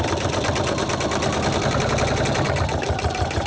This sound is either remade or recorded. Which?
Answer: recorded